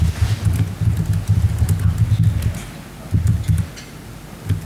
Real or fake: real